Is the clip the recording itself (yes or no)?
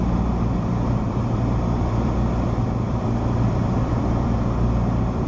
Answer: no